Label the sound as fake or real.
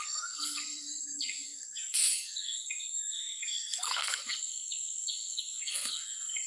fake